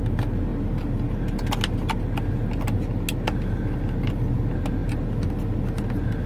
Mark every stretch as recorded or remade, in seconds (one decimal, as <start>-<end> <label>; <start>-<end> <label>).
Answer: 0.0-6.3 recorded